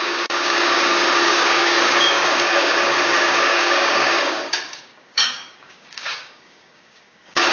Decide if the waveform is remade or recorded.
remade